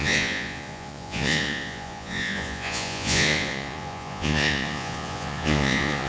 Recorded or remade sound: remade